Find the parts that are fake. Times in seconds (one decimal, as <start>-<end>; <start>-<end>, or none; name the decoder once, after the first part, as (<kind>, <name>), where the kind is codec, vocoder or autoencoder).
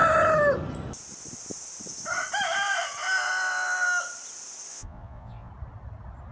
4.7-5.5 (vocoder, Vocos)